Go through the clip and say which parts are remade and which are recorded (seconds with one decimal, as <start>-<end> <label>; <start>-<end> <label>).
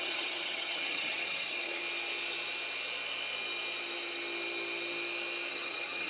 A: 0.0-1.8 remade; 1.8-5.5 recorded; 5.5-6.1 remade